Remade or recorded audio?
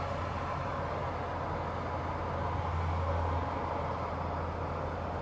recorded